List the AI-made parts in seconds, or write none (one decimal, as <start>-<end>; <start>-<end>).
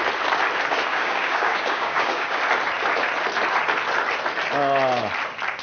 0.9-2.4